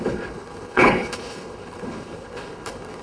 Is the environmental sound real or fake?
fake